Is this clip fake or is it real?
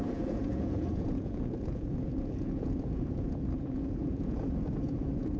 fake